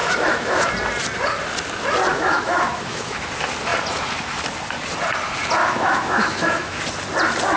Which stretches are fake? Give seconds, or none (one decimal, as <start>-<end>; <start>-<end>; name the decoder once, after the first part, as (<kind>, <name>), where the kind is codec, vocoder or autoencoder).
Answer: 0.0-0.7 (autoencoder, DAC-VAE); 2.1-3.3; 5.6-6.8